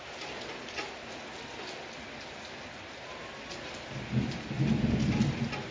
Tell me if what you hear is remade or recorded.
recorded